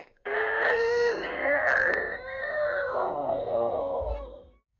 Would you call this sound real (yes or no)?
no